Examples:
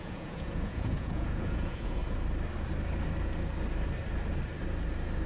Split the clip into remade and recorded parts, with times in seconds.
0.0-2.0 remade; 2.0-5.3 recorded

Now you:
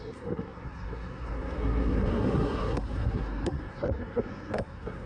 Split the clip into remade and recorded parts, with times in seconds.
0.0-5.1 remade

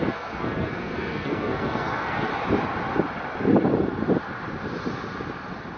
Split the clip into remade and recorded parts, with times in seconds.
0.0-2.3 remade; 2.3-5.8 recorded

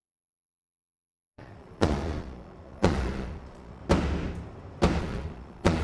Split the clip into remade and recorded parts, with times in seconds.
0.0-3.8 remade; 3.8-5.0 recorded; 5.0-5.8 remade

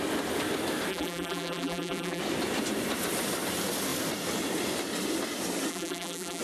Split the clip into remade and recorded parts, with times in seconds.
0.0-0.9 recorded; 0.9-2.2 remade; 2.2-5.7 recorded; 5.7-6.4 remade

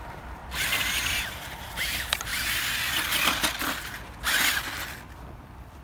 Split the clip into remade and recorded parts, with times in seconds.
0.0-0.4 remade; 0.4-1.2 recorded; 1.2-2.3 remade; 2.3-5.8 recorded